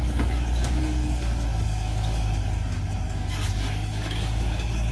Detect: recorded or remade remade